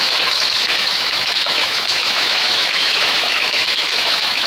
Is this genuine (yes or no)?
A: no